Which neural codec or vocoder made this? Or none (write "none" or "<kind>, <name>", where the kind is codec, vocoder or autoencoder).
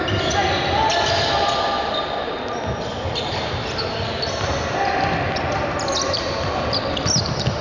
none